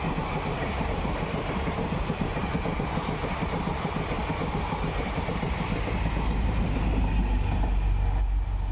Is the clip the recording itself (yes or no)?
yes